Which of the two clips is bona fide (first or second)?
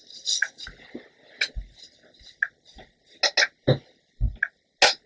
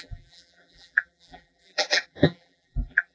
first